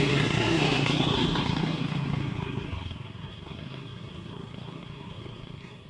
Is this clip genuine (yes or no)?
no